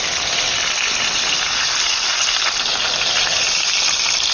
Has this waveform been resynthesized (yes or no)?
no